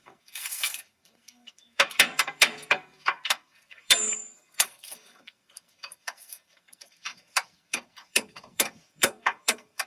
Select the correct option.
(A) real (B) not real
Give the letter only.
B